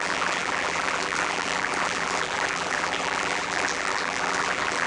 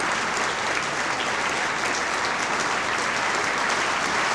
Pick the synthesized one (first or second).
first